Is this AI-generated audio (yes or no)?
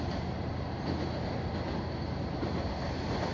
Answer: no